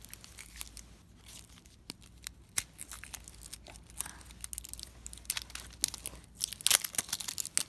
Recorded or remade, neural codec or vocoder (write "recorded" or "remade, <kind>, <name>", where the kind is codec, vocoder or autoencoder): recorded